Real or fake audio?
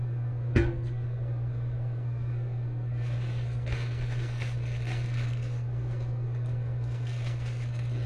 fake